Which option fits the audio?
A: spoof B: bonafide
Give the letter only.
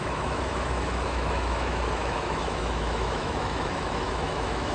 A